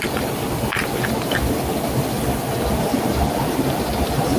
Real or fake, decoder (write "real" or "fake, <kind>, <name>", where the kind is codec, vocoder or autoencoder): fake, vocoder, BigVGAN v2